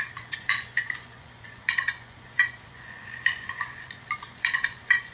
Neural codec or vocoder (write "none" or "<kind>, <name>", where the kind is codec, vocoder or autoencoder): vocoder, Vocos